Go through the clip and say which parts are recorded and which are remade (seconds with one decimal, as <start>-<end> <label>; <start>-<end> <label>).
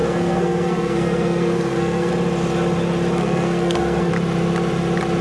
0.0-2.1 remade; 2.1-3.2 recorded; 3.2-4.1 remade; 4.1-5.2 recorded